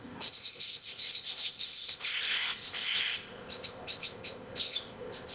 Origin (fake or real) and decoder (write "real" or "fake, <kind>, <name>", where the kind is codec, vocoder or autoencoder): fake, codec, ZipCodec